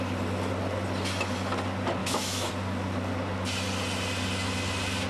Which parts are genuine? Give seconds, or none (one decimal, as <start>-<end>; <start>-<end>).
0.0-2.0; 2.5-5.1